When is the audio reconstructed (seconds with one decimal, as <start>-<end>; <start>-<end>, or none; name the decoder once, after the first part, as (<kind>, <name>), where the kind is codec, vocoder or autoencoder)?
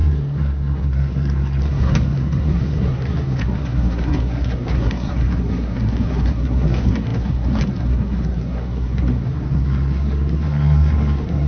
0.0-11.5 (codec, SNAC)